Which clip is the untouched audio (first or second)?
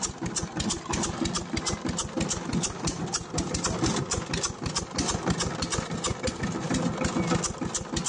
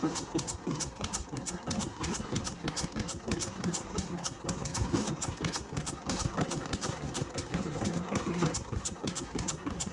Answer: first